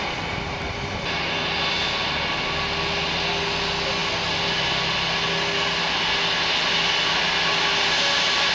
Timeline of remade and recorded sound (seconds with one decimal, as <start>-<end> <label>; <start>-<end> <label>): 0.0-8.5 recorded